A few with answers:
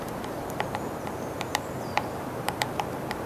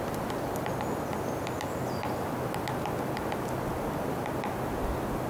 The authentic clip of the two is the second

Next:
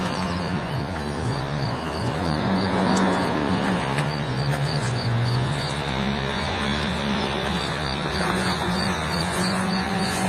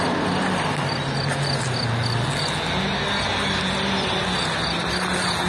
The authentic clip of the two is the second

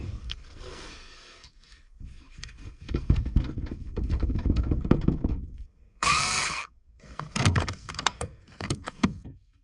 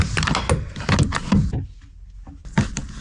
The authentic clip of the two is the second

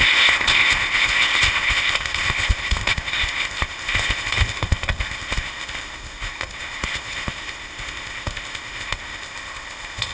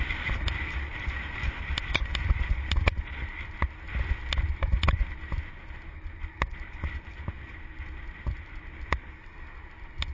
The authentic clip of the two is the second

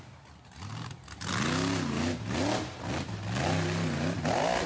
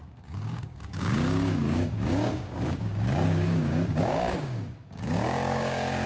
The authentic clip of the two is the first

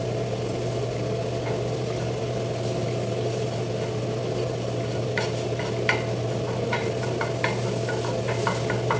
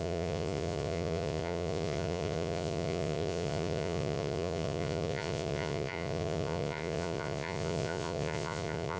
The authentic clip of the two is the first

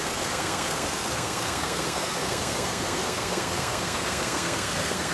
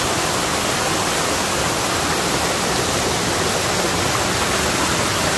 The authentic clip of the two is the second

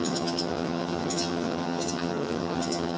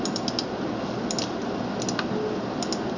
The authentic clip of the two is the second